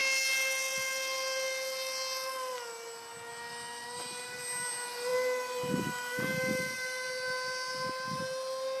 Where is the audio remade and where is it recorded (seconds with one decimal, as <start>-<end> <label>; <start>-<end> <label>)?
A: 0.0-8.8 recorded